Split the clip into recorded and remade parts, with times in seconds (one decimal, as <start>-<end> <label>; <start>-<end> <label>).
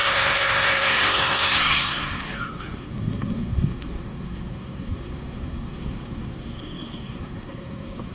0.0-8.1 remade